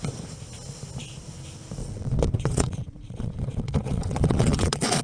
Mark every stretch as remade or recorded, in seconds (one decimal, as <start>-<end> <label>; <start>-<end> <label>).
0.0-1.8 recorded; 1.8-5.0 remade